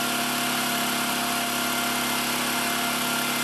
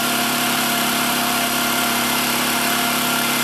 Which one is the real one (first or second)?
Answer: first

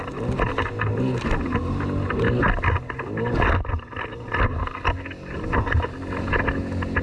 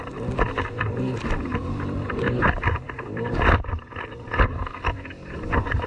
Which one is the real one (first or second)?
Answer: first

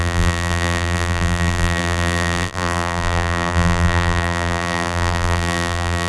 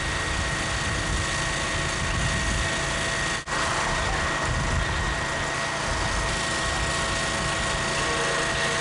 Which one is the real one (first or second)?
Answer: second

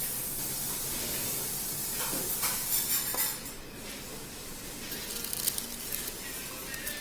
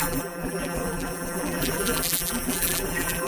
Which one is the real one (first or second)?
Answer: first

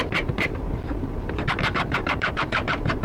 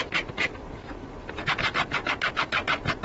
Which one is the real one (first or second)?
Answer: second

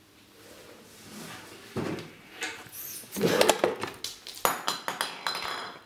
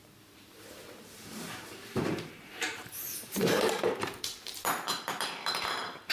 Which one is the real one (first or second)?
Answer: first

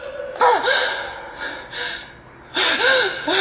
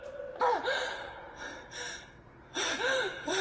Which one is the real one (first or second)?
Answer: first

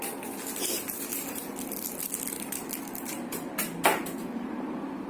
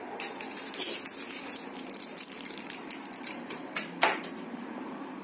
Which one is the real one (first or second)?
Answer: first